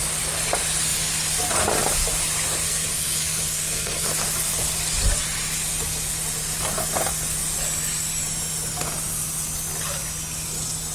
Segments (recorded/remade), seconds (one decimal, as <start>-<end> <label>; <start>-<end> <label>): 0.0-2.6 recorded; 2.6-4.1 remade; 4.1-10.9 recorded